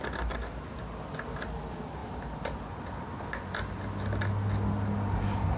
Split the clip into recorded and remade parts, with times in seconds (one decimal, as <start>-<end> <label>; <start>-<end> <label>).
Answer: 0.0-5.6 recorded